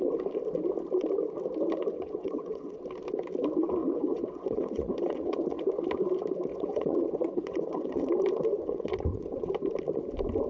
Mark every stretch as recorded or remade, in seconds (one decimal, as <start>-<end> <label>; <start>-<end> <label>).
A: 0.0-1.9 recorded; 1.9-2.8 remade; 2.8-3.8 recorded; 3.8-5.7 remade; 5.7-6.5 recorded; 6.5-8.1 remade; 8.1-8.6 recorded; 8.6-9.5 remade; 9.5-10.5 recorded

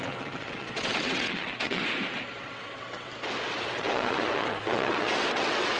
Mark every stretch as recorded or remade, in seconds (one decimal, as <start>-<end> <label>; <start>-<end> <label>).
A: 0.0-1.8 remade; 1.8-2.4 recorded; 2.4-3.1 remade; 3.1-3.6 recorded; 3.6-5.8 remade

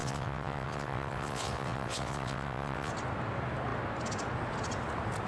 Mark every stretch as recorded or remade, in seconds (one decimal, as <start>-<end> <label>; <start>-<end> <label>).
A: 0.0-2.9 remade; 2.9-5.3 recorded

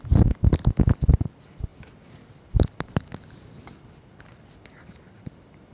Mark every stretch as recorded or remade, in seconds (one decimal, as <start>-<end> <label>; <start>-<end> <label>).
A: 0.0-5.7 recorded

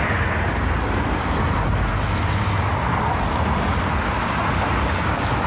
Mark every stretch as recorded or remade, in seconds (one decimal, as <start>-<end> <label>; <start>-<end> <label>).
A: 0.0-5.5 recorded

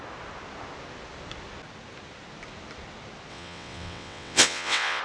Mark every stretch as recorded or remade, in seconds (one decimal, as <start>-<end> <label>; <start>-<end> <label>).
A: 0.0-3.3 recorded; 3.3-5.0 remade